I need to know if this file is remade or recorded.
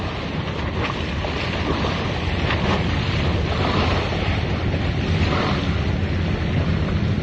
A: recorded